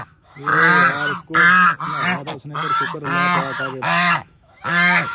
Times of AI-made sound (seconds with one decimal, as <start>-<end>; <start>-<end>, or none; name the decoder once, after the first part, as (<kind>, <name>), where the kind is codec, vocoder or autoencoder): 0.0-0.5 (autoencoder, DAC-VAE); 3.6-5.1